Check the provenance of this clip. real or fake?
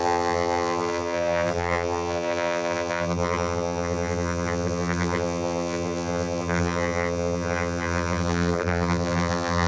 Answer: fake